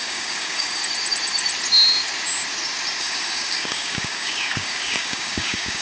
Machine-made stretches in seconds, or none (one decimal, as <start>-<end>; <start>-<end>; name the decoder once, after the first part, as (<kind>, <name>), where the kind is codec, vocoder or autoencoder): 0.0-0.8 (codec, DAC); 3.0-5.8